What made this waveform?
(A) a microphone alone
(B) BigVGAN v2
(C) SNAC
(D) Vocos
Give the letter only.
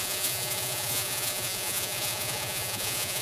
D